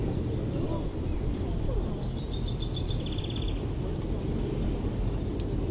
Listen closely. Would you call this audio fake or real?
real